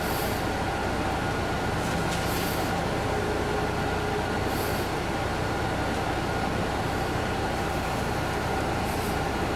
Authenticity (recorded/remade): recorded